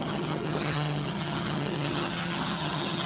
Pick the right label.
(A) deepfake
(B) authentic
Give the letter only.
A